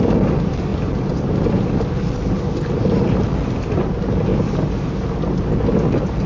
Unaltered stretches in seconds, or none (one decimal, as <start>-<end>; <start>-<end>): 0.0-6.3